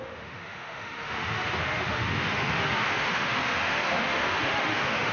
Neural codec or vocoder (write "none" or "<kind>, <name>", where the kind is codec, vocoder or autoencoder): autoencoder, DAC-VAE